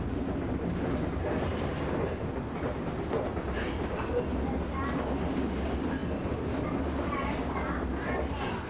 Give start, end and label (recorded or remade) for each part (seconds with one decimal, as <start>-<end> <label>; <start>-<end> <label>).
0.0-8.7 recorded